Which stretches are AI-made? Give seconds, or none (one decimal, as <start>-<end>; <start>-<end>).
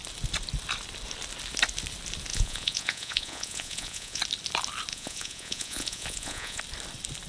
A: 2.3-4.2; 4.9-6.6